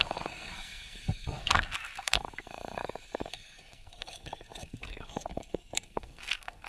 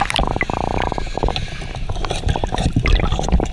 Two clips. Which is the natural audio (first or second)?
second